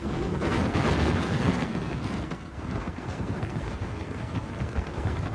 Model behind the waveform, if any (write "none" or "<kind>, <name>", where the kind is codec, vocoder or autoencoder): codec, SNAC